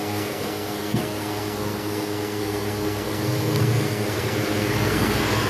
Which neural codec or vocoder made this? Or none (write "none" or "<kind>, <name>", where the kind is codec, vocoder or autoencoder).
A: codec, SNAC